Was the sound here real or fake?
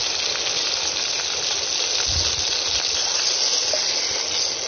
real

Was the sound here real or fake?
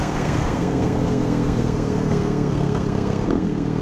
fake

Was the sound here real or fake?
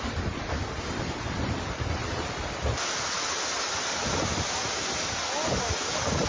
real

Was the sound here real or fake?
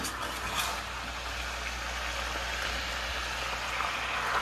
real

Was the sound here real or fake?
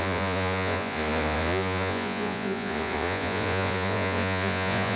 fake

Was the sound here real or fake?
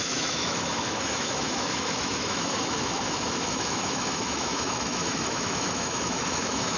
fake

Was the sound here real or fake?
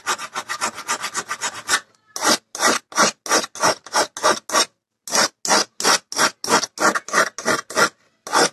real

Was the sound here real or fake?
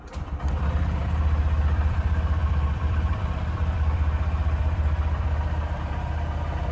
fake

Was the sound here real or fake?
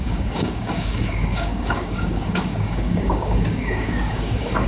fake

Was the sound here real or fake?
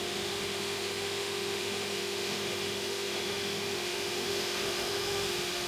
fake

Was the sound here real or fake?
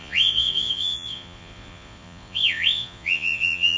fake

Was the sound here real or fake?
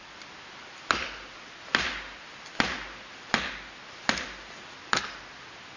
real